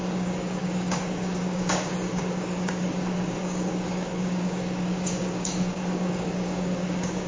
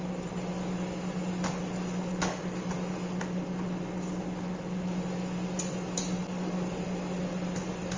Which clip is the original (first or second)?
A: second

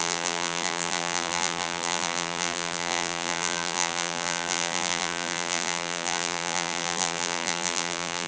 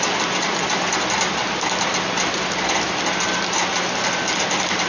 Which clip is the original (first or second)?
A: second